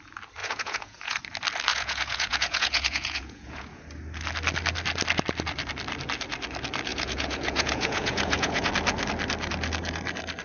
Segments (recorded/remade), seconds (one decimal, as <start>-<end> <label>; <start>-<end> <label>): 0.0-0.4 recorded; 0.4-1.2 remade; 1.2-1.7 recorded; 1.7-3.8 remade; 3.8-6.9 recorded; 6.9-8.7 remade; 8.7-10.4 recorded